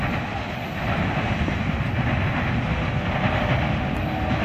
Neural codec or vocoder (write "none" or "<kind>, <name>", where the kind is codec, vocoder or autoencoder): none